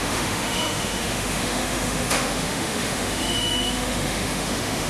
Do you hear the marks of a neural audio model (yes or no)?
yes